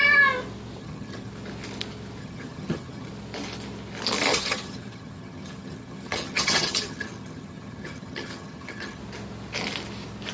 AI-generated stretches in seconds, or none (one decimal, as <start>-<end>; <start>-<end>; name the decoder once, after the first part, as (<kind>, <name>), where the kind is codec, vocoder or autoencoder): 0.8-1.3 (vocoder, HiFi-GAN); 2.2-3.1; 4.3-9.0